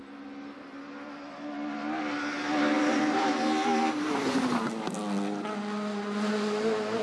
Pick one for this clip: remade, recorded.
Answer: recorded